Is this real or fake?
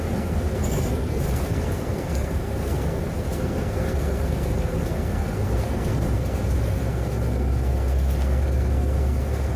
fake